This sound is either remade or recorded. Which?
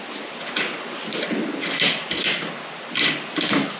recorded